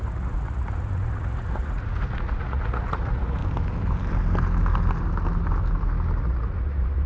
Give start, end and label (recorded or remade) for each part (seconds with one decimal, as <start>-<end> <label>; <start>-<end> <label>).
0.0-3.4 remade; 3.4-6.2 recorded; 6.2-7.1 remade